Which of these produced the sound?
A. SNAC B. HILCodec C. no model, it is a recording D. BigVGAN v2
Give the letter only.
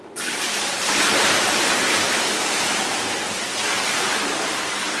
D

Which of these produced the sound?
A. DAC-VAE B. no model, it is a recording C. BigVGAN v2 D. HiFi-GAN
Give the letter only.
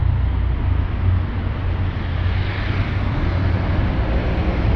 B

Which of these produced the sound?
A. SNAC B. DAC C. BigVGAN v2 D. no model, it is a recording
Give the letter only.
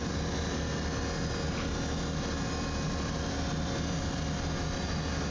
D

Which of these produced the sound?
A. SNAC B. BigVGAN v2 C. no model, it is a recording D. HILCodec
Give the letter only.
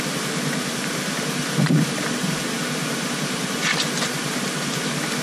B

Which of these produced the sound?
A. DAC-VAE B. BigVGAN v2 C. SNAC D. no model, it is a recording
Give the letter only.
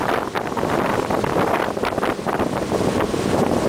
D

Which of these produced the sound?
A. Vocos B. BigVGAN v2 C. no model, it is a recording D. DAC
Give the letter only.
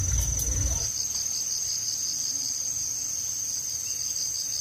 C